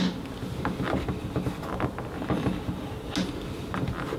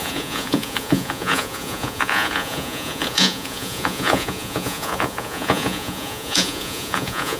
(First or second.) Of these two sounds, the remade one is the second